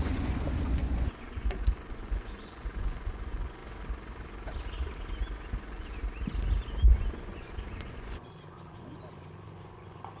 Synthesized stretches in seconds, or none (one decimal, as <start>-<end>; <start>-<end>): 0.0-3.6; 5.6-6.0; 6.9-10.2